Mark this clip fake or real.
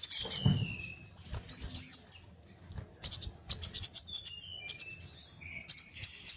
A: real